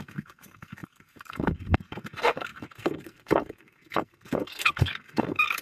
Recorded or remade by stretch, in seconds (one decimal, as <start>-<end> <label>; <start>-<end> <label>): 0.0-5.6 remade